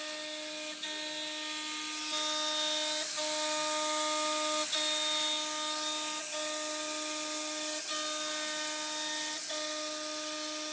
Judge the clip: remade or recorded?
recorded